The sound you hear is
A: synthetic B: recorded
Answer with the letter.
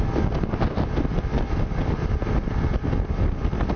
B